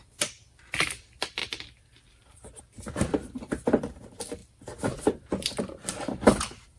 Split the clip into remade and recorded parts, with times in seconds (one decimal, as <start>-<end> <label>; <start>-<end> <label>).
0.0-4.4 remade; 4.4-5.6 recorded; 5.6-6.8 remade